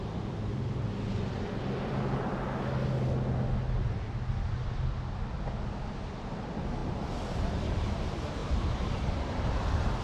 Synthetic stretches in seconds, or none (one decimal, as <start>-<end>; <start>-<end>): 1.9-2.9; 8.4-9.1